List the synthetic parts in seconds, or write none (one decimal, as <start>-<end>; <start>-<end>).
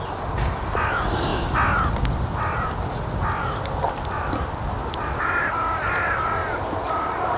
none